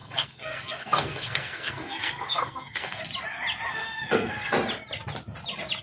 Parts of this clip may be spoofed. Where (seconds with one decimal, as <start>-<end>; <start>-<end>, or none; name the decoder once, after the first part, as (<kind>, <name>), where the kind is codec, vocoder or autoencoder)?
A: 0.0-3.0 (codec, SNAC); 3.7-4.5